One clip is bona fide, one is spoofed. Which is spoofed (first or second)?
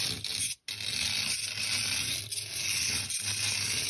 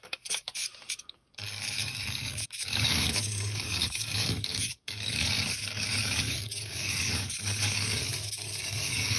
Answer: second